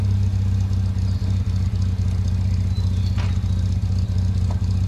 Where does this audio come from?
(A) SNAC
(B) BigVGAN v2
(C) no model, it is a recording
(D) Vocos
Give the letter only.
C